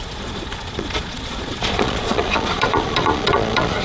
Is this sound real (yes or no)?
no